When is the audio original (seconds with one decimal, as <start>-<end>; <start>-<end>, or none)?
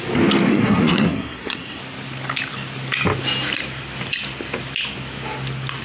0.0-0.5; 1.8-5.8